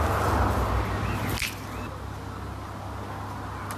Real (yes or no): yes